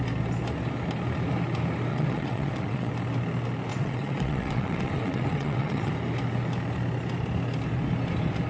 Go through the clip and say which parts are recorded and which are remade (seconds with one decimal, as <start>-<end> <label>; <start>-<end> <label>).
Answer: 0.0-1.9 recorded; 1.9-2.9 remade; 2.9-3.7 recorded; 3.7-5.9 remade; 5.9-8.5 recorded